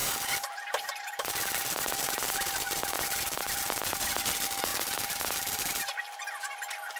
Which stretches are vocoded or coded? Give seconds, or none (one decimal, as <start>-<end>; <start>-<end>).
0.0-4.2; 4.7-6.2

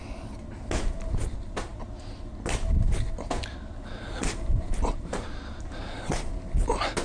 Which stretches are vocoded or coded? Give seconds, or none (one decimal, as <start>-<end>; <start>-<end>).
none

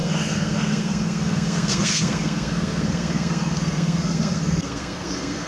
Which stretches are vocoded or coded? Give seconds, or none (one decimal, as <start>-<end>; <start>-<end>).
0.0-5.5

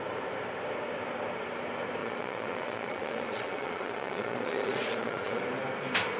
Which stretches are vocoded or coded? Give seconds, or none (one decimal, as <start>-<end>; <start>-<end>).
2.0-5.4

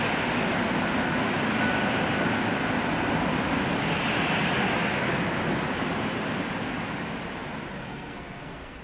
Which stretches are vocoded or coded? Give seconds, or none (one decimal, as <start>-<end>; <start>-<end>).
7.8-8.8